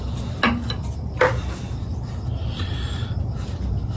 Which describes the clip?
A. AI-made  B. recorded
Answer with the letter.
B